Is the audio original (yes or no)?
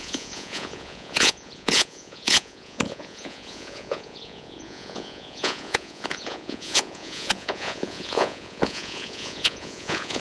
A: no